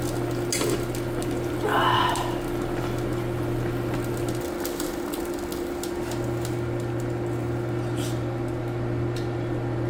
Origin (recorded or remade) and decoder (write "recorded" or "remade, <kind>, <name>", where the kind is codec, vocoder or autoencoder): recorded